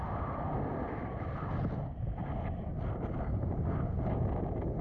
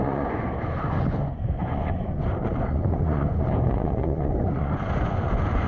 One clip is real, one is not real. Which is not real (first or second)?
second